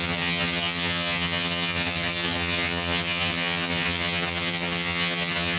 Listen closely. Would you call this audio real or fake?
fake